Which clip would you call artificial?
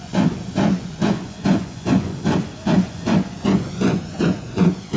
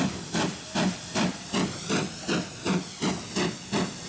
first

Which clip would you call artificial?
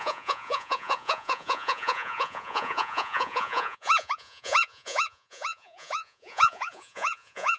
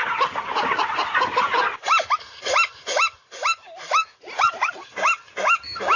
first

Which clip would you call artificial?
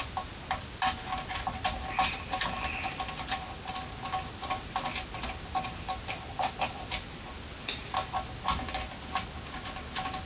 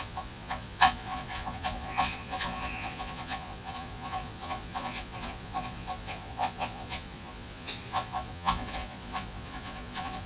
second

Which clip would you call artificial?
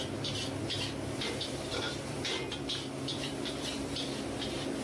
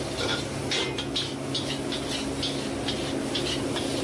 first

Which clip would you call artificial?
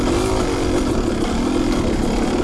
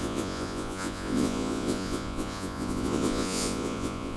second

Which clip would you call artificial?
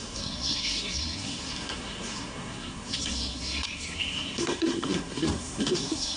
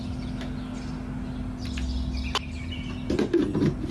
first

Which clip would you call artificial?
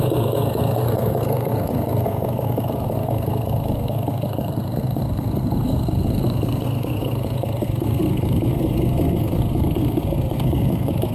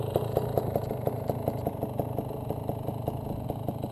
first